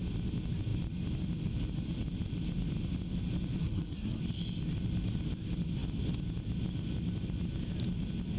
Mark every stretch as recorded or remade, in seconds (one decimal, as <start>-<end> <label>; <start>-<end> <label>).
0.0-3.6 recorded; 3.6-4.2 remade; 4.2-8.4 recorded